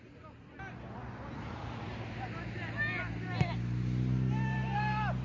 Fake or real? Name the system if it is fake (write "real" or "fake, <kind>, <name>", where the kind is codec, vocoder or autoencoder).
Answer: real